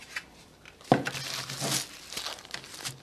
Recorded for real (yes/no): yes